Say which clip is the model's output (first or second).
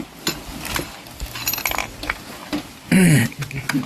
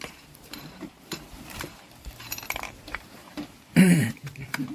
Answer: second